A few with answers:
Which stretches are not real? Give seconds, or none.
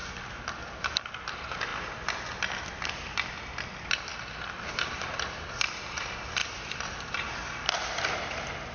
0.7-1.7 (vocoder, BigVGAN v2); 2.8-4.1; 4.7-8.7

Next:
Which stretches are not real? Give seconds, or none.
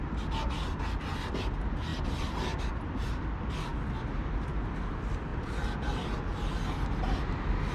none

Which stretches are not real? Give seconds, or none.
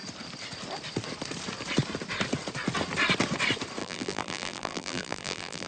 3.8-5.7 (vocoder, BigVGAN v2)